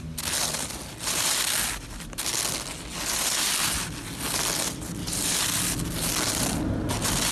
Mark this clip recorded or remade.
recorded